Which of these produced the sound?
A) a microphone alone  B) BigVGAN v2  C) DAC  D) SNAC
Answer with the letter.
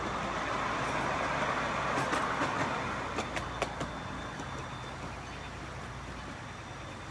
A